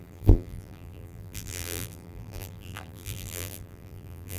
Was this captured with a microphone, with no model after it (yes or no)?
no